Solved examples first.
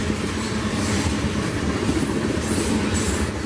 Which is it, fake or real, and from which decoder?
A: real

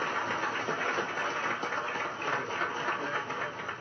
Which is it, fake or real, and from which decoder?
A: real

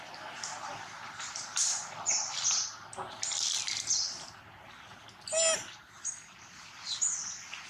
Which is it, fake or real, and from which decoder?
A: real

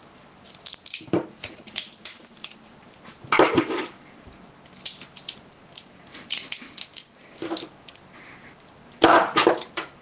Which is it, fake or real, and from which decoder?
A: real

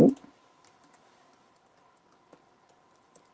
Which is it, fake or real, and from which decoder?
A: real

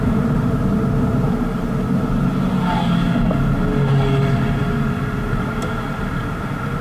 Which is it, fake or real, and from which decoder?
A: real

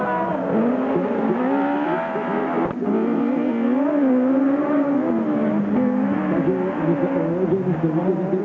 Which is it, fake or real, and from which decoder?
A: real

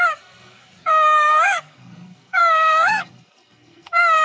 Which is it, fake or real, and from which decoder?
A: fake, codec, SNAC